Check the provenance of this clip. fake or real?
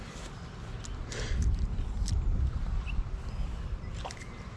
real